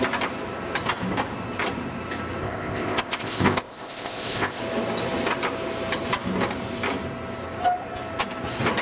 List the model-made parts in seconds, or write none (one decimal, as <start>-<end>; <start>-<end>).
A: 2.4-4.6